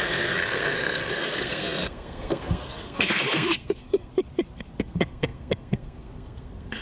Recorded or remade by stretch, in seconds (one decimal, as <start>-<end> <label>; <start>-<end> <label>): 0.0-4.1 remade; 4.1-4.8 recorded; 4.8-6.8 remade